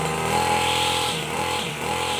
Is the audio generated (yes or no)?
yes